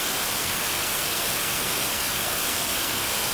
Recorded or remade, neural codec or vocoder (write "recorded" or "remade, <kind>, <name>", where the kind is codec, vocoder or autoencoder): remade, codec, SNAC